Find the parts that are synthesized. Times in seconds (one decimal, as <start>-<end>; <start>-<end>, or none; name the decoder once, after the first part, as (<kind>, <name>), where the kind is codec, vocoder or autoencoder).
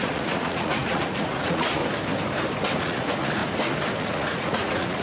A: 0.0-1.8 (vocoder, Vocos); 2.8-3.4; 4.0-5.0